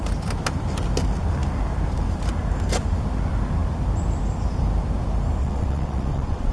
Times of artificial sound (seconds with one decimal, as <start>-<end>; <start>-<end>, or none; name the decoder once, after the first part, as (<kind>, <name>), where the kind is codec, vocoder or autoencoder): 5.4-6.5 (vocoder, WaveNeXt)